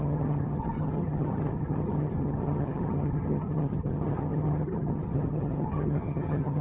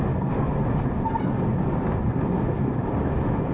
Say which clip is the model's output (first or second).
first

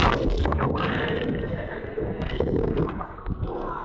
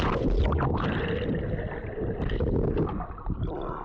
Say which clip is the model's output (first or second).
first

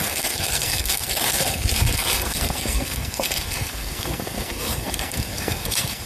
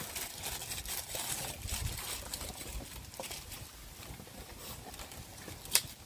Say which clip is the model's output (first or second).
first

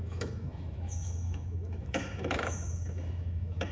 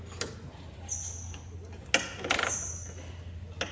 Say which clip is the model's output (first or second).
first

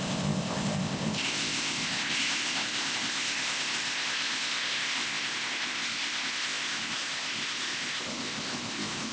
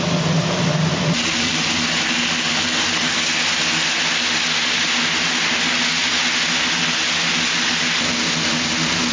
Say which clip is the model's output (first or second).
first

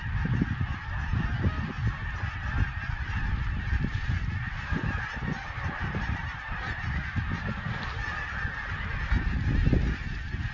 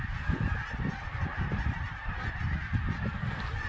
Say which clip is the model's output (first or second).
second